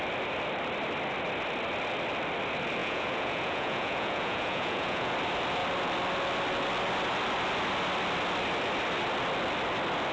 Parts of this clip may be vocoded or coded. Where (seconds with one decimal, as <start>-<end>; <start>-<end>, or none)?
2.8-5.1